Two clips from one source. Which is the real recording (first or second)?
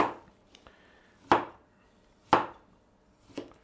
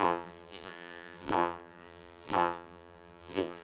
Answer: first